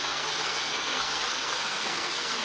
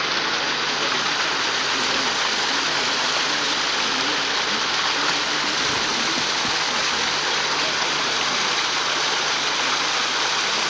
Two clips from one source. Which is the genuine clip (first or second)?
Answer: second